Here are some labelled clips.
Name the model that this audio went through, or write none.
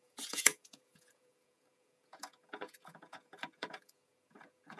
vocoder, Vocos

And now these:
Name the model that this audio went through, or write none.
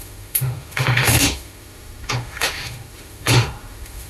autoencoder, DAC-VAE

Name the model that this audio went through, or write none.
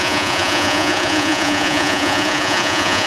vocoder, Vocos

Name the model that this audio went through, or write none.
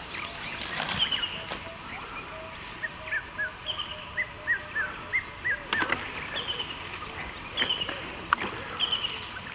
none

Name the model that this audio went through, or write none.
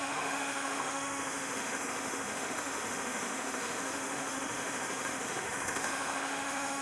autoencoder, DAC-VAE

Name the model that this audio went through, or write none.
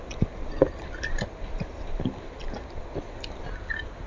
none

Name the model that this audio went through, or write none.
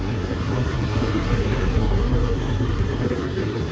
codec, SNAC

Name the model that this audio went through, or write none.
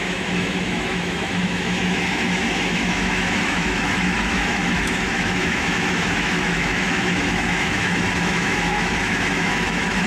autoencoder, DAC-VAE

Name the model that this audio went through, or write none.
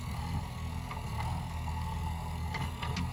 codec, SNAC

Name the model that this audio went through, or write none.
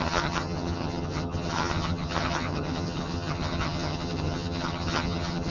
vocoder, HiFi-GAN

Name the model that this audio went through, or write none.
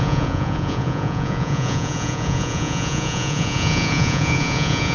vocoder, Vocos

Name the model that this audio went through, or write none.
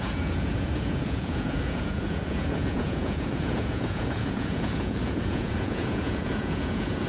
vocoder, Vocos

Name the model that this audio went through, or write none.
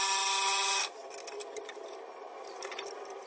none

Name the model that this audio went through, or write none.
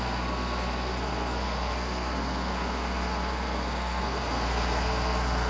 codec, SNAC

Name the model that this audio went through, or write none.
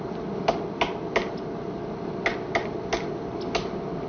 none